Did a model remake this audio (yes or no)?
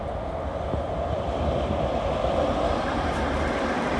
yes